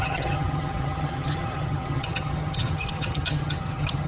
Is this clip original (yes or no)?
no